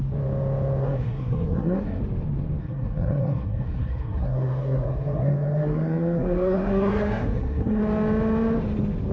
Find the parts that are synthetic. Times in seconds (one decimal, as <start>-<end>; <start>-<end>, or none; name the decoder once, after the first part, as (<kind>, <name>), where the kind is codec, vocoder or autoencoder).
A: 0.8-2.0 (codec, SNAC); 2.6-7.8